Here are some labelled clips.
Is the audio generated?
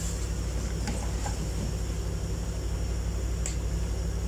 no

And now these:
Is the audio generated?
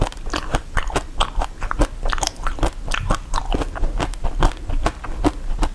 no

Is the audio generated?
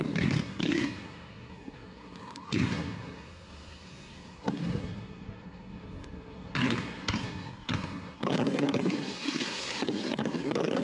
yes